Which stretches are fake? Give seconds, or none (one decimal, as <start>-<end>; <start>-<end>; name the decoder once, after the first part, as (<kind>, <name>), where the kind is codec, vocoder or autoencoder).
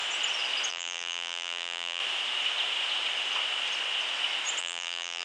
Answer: 0.7-2.0 (vocoder, BigVGAN v2); 4.6-5.2